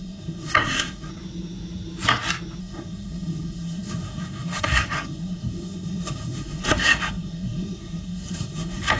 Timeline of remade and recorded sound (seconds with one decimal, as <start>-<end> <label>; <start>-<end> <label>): 0.0-1.1 remade; 1.1-2.6 recorded; 2.6-9.0 remade